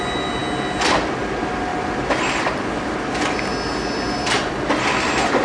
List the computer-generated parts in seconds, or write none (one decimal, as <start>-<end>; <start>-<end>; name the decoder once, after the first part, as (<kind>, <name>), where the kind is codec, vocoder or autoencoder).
none